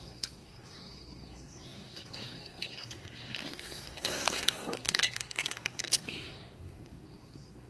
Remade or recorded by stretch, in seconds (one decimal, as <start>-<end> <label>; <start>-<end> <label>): 0.0-7.7 remade